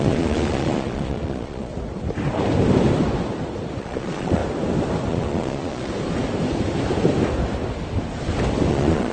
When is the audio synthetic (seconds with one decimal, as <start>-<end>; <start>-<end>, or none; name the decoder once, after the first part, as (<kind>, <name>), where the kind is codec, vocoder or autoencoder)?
0.0-1.7 (vocoder, Vocos); 3.8-4.4; 5.1-5.9; 8.7-9.1